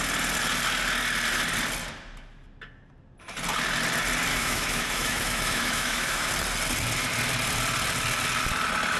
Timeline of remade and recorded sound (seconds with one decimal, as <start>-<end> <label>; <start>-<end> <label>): 0.0-4.3 recorded; 4.3-6.3 remade; 6.3-9.0 recorded